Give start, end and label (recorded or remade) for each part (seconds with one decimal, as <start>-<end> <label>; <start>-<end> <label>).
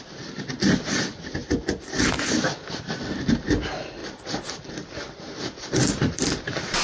0.0-6.8 recorded